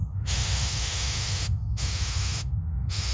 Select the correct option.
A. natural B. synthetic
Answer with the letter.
B